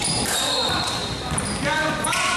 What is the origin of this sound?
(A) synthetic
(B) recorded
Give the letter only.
A